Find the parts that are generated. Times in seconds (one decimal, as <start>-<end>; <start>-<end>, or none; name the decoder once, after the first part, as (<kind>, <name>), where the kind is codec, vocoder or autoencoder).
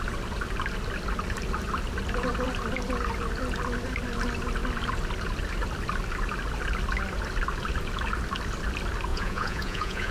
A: 9.1-10.1 (vocoder, Vocos)